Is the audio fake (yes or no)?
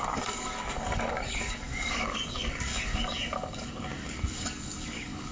yes